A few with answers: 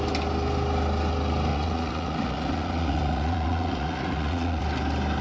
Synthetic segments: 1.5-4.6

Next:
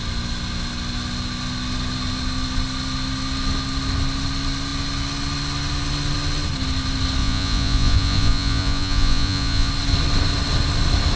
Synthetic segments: 7.2-9.7

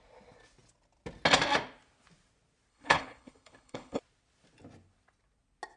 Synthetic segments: 2.7-4.0

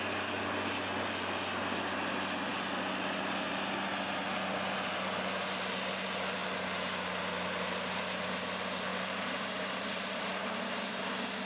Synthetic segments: 8.9-11.1